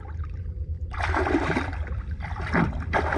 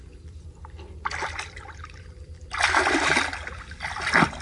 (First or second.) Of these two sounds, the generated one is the first